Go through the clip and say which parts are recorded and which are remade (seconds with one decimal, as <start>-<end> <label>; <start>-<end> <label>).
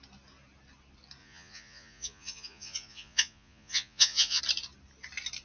0.0-1.2 recorded; 1.2-4.4 remade; 4.4-5.4 recorded